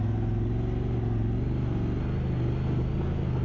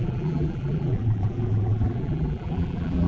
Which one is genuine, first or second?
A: first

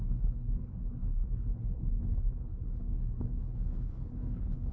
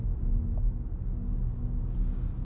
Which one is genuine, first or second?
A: second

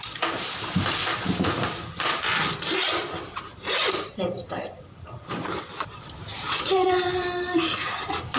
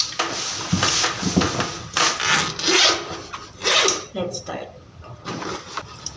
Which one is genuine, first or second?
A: second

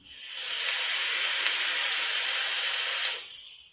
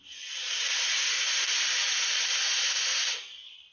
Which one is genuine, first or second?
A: second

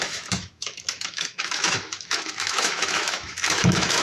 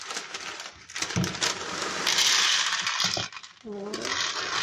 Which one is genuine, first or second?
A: second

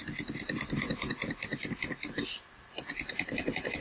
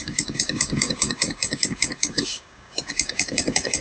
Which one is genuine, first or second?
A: first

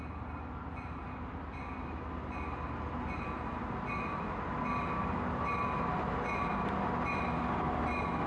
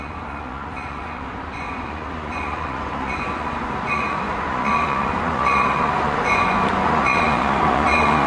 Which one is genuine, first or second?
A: first